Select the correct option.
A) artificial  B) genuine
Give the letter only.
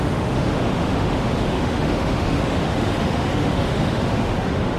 A